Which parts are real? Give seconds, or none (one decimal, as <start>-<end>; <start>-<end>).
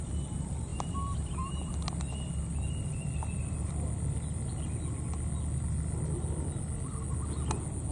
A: 0.0-7.9